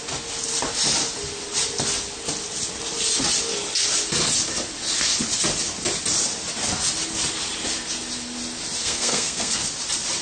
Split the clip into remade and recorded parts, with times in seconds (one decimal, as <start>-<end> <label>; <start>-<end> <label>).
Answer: 0.0-8.8 recorded; 8.8-9.6 remade; 9.6-10.2 recorded